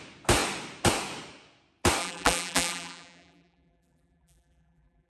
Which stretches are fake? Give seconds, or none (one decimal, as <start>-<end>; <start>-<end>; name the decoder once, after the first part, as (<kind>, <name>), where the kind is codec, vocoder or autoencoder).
2.0-5.1 (vocoder, BigVGAN v2)